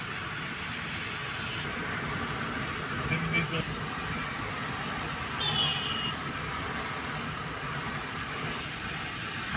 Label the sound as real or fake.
real